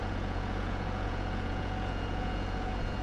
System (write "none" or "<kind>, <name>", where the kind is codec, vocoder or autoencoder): vocoder, Vocos